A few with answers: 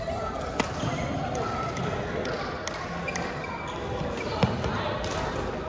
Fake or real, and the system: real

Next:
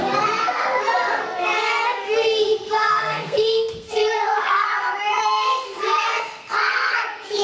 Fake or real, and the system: fake, codec, SNAC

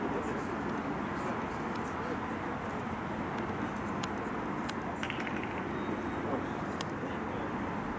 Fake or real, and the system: real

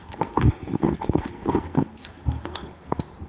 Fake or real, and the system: fake, codec, SNAC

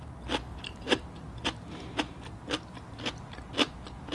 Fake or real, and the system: real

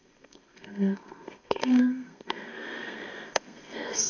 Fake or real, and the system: fake, codec, SNAC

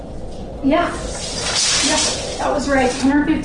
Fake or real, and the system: real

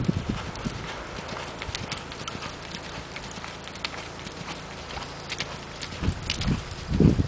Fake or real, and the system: real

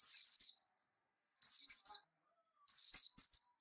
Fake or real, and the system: real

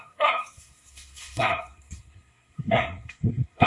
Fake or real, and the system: fake, codec, SNAC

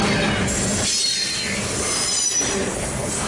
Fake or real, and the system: real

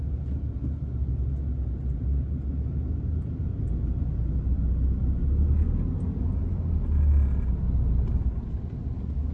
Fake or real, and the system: real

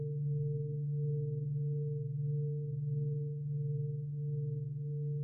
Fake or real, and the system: fake, codec, SNAC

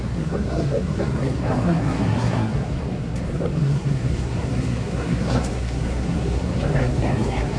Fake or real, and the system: fake, codec, SNAC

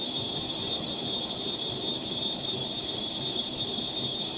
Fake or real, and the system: real